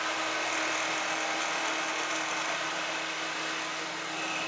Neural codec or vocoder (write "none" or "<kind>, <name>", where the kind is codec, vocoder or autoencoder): none